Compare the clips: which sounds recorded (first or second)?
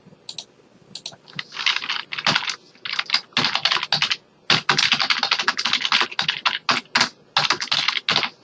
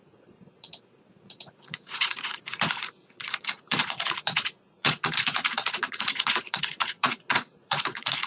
first